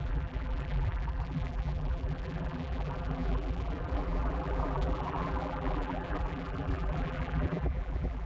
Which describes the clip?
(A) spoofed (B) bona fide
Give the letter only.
A